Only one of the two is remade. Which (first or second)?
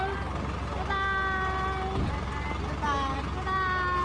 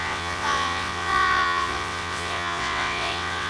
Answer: second